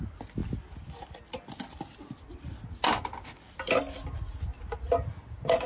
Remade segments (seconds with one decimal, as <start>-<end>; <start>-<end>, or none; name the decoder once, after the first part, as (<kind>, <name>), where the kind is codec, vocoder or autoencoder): none